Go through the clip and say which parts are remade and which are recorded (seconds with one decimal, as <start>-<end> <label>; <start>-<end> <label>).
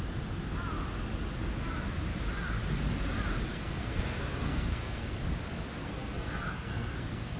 0.0-3.5 recorded; 3.5-5.2 remade; 5.2-5.8 recorded; 5.8-7.4 remade